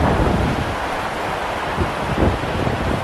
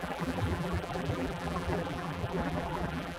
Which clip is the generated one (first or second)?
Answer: second